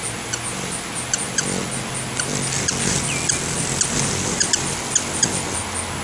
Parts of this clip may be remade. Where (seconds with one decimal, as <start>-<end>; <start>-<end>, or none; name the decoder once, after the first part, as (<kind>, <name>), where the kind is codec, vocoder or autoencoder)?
none